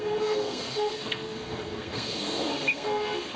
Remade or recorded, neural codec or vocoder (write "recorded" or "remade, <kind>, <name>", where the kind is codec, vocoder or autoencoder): remade, codec, SNAC